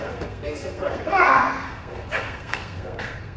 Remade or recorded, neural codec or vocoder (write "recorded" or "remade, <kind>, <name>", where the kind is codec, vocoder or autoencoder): remade, codec, SNAC